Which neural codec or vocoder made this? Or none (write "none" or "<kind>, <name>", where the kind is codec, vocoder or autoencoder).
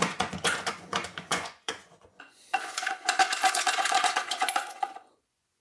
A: vocoder, Vocos